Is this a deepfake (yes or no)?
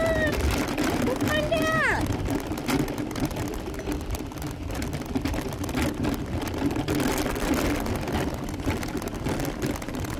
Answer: no